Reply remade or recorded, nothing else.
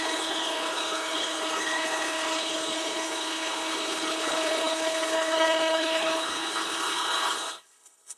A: remade